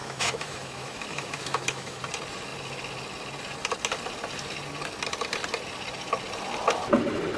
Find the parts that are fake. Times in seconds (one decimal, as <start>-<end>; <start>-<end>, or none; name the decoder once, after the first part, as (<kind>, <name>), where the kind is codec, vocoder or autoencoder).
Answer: 0.0-2.0 (autoencoder, DAC-VAE)